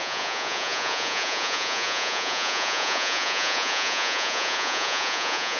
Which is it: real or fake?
fake